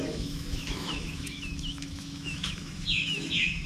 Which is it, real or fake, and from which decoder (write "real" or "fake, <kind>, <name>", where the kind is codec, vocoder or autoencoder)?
fake, autoencoder, DAC-VAE